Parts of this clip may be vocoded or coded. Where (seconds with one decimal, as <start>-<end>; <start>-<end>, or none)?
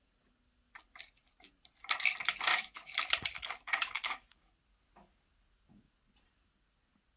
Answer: 2.5-4.5